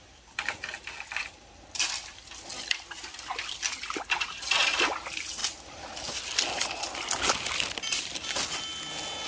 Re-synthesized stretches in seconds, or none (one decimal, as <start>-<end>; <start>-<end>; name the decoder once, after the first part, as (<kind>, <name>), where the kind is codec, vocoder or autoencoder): none

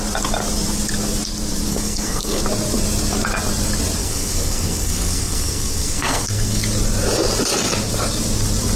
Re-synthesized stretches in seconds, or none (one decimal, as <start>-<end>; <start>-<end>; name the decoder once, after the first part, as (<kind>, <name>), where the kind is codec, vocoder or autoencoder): 1.7-2.4 (codec, SNAC); 4.0-6.6

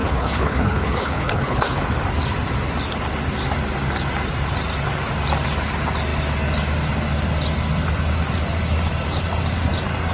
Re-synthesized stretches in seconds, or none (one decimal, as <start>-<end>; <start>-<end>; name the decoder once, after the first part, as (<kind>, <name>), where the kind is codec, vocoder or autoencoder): 0.0-1.8 (codec, HILCodec)

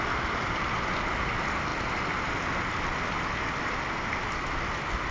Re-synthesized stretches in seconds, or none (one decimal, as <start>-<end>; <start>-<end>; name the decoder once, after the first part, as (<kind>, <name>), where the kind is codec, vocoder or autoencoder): none

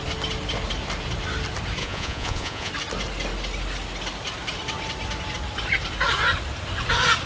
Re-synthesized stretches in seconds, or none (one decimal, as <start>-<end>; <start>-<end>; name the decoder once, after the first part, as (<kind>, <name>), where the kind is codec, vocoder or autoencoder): 1.8-2.7 (vocoder, Vocos)